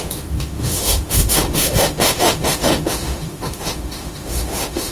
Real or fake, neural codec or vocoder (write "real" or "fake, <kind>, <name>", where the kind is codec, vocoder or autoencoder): fake, autoencoder, DAC-VAE